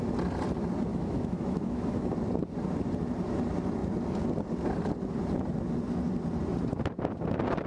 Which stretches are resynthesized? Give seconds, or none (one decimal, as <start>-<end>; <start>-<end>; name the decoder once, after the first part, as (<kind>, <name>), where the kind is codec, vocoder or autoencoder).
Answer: 0.9-2.1 (autoencoder, DAC-VAE)